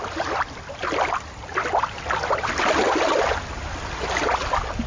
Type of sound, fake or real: real